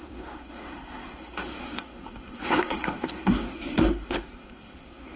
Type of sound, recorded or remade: remade